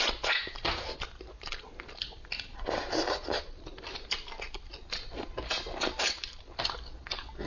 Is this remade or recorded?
recorded